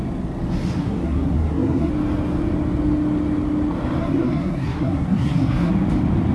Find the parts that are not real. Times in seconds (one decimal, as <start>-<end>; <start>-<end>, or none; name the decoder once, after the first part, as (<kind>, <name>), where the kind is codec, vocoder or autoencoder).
0.8-1.9 (codec, SNAC); 4.0-5.7